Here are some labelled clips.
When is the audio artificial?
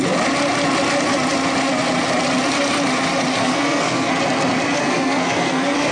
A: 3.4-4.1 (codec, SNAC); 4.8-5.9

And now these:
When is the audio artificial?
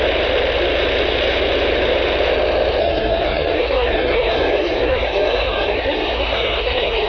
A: 2.8-7.1 (codec, SNAC)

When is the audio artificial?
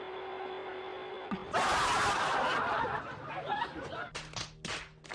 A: none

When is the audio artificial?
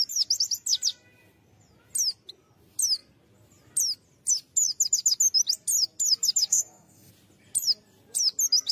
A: 6.5-7.1 (codec, SNAC)